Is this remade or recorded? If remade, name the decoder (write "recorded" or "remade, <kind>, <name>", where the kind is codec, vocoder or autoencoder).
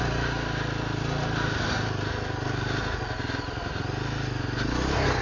recorded